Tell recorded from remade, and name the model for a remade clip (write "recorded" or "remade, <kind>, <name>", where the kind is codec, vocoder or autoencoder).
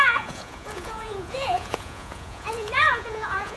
remade, vocoder, Vocos